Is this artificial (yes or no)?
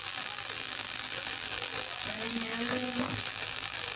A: yes